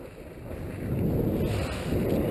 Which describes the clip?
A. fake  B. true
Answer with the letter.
B